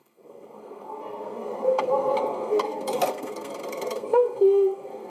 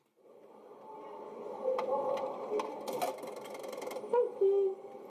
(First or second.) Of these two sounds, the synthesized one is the first